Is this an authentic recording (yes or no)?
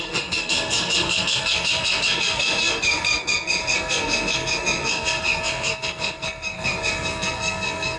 no